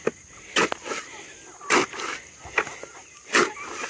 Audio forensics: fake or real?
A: real